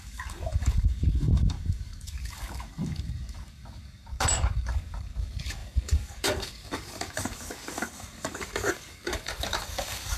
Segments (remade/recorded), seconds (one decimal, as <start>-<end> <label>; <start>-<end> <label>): 0.0-10.2 remade